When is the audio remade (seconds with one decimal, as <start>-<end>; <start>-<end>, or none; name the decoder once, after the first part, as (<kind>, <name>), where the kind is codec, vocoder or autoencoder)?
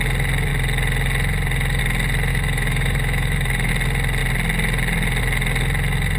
2.3-3.7 (autoencoder, DAC-VAE)